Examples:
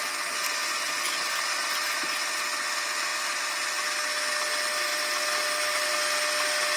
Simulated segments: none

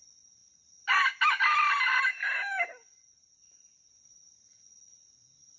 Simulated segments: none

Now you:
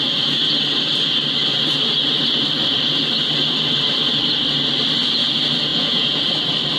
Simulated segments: 5.7-6.2 (vocoder, Vocos)

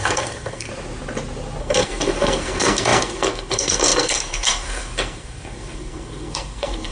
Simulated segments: 0.0-0.7 (codec, SNAC); 1.6-6.9

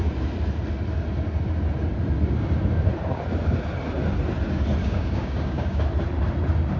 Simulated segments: 4.8-5.8 (codec, DAC)